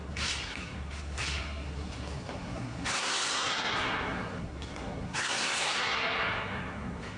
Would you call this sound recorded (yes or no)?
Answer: no